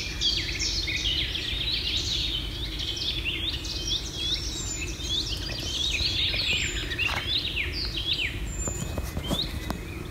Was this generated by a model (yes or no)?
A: no